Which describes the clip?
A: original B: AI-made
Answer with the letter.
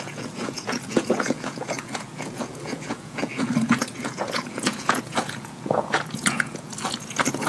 B